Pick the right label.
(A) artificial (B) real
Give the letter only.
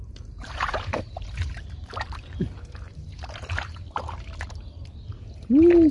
A